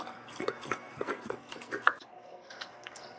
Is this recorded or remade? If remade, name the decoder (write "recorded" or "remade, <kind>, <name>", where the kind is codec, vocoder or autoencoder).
remade, codec, SNAC